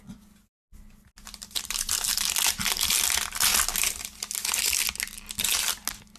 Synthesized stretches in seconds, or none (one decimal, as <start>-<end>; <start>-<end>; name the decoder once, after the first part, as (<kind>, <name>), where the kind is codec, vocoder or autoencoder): none